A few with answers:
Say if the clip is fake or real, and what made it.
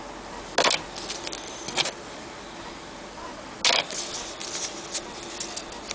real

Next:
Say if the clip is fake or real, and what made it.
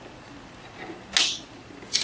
real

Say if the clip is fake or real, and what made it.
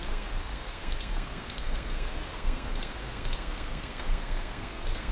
fake, codec, SNAC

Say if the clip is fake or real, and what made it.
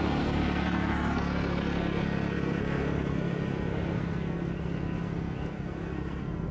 fake, codec, SNAC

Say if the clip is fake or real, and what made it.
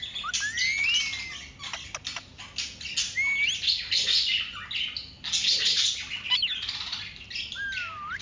real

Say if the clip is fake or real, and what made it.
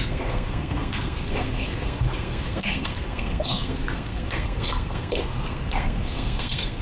fake, codec, SNAC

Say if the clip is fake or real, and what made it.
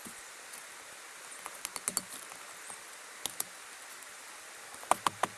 real